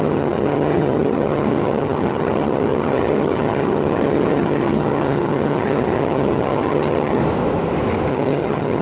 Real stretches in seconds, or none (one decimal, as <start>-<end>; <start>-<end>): 7.2-8.1